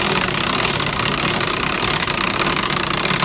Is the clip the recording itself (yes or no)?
yes